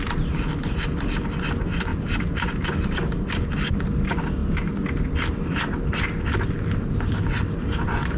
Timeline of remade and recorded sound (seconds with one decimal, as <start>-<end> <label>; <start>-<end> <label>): 0.0-1.9 recorded; 1.9-2.5 remade; 2.5-8.2 recorded